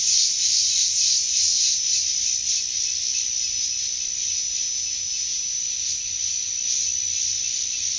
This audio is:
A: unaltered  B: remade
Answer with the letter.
A